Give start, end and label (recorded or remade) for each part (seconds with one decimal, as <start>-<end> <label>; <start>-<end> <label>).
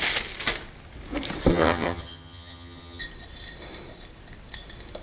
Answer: 0.0-1.5 recorded; 1.5-3.0 remade; 3.0-5.0 recorded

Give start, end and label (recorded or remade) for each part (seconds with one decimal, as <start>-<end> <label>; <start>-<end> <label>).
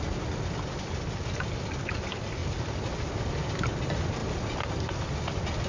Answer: 0.0-5.7 recorded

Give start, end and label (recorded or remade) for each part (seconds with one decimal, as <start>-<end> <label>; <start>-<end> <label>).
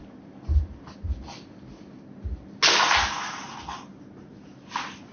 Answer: 0.0-5.1 recorded